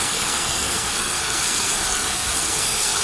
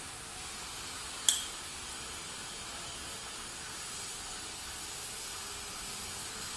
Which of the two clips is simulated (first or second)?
first